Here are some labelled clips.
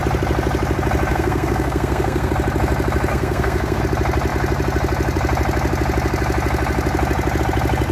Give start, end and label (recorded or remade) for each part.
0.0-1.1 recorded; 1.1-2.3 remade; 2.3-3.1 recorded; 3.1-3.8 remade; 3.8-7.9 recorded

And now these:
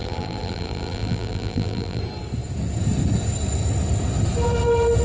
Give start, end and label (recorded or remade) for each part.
0.0-2.0 remade; 2.0-5.0 recorded